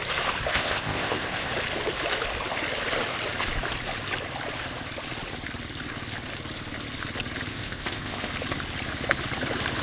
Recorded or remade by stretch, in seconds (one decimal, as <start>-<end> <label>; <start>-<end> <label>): 0.0-0.5 recorded; 0.5-1.5 remade; 1.5-7.5 recorded; 7.5-8.3 remade; 8.3-9.8 recorded